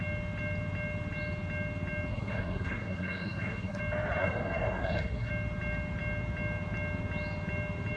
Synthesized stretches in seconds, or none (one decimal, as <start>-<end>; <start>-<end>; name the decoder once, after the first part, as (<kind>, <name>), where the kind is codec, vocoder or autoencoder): 2.1-3.8 (codec, SNAC); 4.2-5.3